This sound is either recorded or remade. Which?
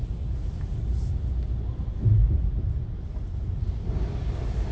recorded